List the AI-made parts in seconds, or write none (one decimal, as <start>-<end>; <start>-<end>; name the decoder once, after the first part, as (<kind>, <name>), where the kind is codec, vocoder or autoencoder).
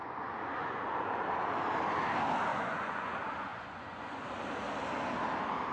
0.0-1.2 (vocoder, Vocos); 2.5-3.1; 3.5-4.2